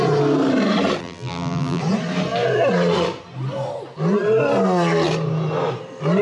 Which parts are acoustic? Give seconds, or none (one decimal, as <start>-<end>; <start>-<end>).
0.0-1.0; 1.8-6.2